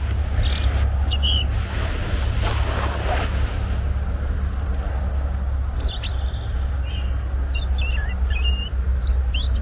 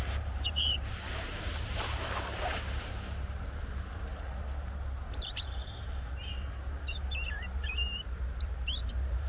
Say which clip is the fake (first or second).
second